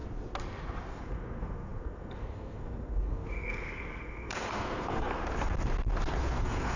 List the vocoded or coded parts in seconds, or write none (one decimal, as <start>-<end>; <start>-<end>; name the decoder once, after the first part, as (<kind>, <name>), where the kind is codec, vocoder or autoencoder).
0.9-5.2 (codec, SNAC); 6.2-6.8